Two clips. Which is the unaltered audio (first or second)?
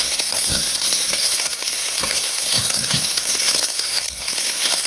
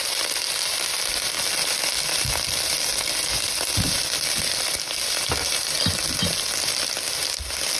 second